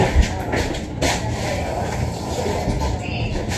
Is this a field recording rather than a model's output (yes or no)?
yes